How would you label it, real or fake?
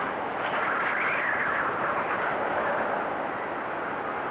real